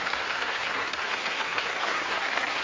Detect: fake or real fake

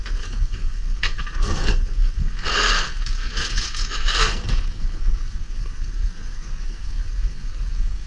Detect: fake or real fake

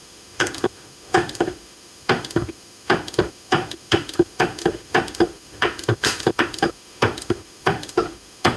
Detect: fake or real fake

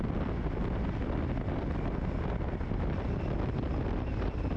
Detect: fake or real real